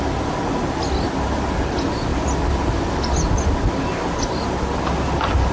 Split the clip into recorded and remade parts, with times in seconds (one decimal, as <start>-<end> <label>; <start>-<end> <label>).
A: 0.0-5.5 recorded